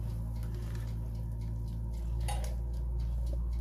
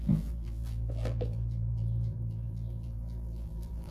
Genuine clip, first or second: first